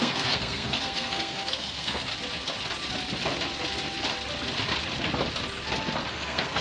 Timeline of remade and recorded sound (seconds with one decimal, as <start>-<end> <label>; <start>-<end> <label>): 0.0-2.1 remade; 2.1-6.1 recorded; 6.1-6.6 remade